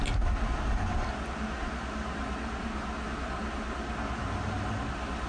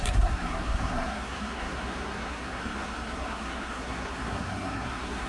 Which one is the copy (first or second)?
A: second